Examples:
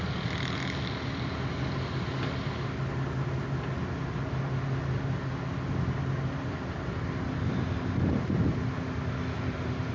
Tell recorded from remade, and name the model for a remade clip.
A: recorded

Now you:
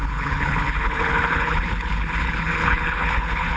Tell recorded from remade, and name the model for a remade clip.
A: remade, codec, HILCodec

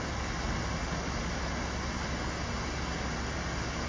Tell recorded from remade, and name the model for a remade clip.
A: recorded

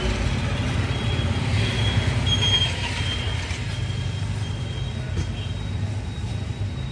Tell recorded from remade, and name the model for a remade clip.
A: recorded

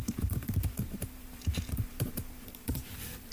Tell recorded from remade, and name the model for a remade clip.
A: remade, vocoder, BigVGAN v2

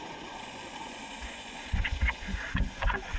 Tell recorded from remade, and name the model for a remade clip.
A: remade, vocoder, Vocos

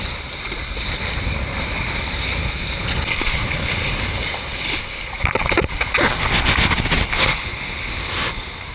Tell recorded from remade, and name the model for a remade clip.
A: recorded